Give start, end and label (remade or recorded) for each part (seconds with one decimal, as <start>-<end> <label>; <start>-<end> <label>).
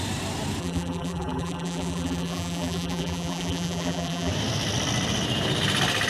0.0-0.6 recorded; 0.6-4.3 remade; 4.3-6.1 recorded